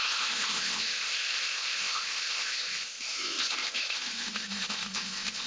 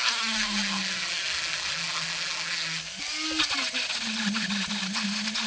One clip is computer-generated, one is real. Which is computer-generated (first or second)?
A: first